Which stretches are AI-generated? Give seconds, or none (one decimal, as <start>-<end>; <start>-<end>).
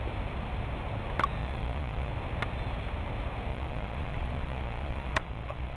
1.4-2.1; 3.5-5.8